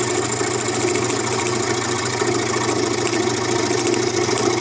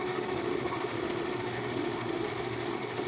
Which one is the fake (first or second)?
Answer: second